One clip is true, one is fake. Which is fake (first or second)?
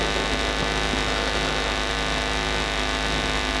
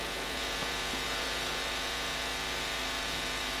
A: second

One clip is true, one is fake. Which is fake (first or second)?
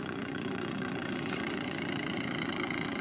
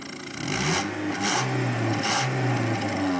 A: first